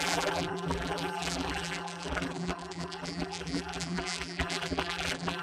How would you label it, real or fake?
fake